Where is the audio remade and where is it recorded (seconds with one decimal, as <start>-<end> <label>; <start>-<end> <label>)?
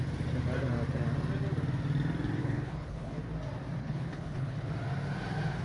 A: 0.0-2.4 recorded; 2.4-3.2 remade; 3.2-3.8 recorded; 3.8-4.7 remade; 4.7-5.6 recorded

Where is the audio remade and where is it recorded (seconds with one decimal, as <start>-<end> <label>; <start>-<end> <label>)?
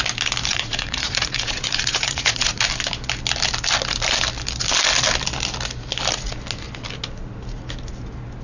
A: 0.0-0.5 recorded; 0.5-2.6 remade; 2.6-8.4 recorded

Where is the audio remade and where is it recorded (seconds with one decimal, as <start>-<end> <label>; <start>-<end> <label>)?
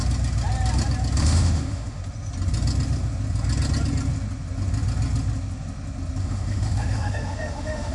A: 0.0-1.2 recorded; 1.2-2.0 remade; 2.0-6.2 recorded; 6.2-7.9 remade